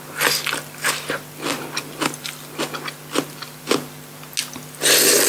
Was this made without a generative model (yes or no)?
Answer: yes